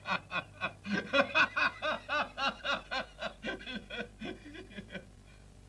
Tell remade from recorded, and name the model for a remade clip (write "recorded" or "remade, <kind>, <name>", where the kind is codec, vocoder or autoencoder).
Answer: recorded